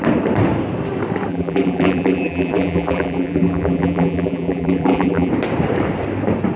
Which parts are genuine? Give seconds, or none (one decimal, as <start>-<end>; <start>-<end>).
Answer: 0.0-1.3; 5.3-6.6

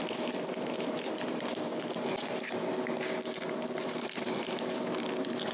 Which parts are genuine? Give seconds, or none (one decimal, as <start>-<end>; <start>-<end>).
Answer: 0.0-5.5